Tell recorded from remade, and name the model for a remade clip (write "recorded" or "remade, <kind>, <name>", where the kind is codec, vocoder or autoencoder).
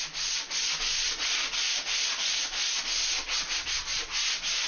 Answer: recorded